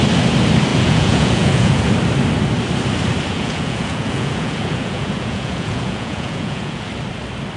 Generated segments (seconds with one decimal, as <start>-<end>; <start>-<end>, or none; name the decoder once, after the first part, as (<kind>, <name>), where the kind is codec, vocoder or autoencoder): 0.7-1.8 (vocoder, Vocos); 3.3-6.9